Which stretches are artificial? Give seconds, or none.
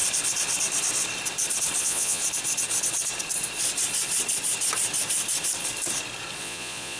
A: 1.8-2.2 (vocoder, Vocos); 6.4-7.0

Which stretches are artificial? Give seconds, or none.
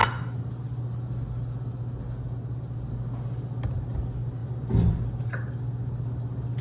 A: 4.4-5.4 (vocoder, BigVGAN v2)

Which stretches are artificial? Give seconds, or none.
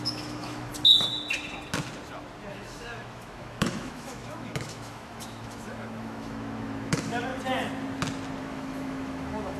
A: 0.0-0.7 (autoencoder, DAC-VAE); 2.5-7.3; 8.4-9.6